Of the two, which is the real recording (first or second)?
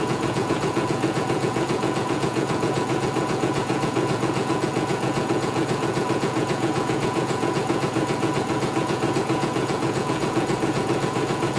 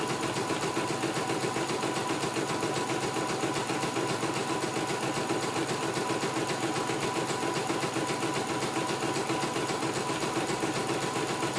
second